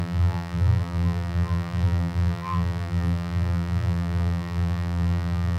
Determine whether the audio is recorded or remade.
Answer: remade